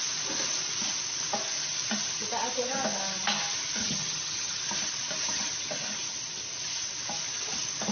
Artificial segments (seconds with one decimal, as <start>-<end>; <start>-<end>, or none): 3.8-4.6

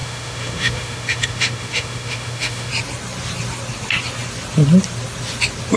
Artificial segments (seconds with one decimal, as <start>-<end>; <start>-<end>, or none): 0.0-2.7

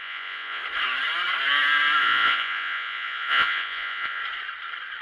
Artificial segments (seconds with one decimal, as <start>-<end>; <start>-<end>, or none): 0.0-0.6; 2.0-4.2

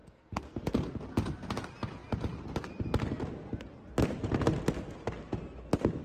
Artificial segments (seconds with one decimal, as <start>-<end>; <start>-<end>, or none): 0.0-0.6

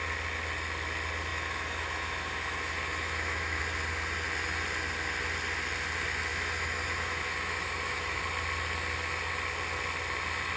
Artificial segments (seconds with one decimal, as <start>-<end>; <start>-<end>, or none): 1.3-3.6; 6.3-8.2

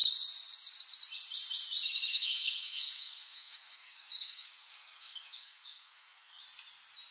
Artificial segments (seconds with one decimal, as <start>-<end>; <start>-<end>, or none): 2.1-6.4

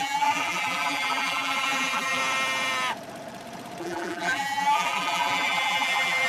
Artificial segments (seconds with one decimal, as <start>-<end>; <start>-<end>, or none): 0.0-2.2; 3.8-6.3

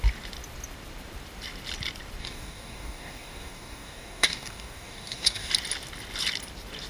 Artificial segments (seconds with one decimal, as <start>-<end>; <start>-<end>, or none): 2.2-5.5